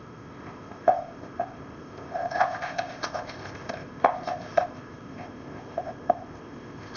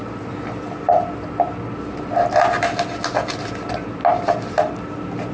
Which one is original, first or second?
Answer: second